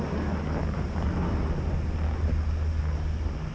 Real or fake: real